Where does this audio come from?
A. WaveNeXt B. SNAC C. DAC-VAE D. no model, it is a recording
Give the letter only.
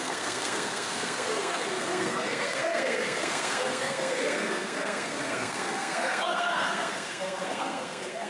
B